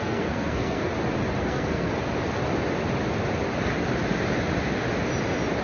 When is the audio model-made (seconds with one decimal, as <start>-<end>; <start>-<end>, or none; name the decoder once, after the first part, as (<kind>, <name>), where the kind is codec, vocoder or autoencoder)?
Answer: 0.0-0.9 (codec, SNAC); 1.4-1.9